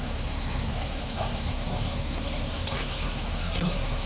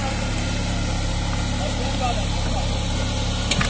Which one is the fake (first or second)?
first